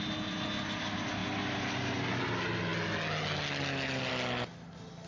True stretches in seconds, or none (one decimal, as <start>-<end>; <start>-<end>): 0.0-5.1